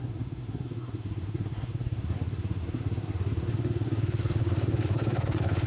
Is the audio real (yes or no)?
no